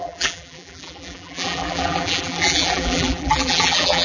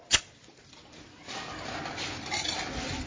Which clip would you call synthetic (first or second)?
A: first